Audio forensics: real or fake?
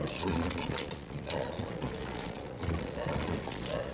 fake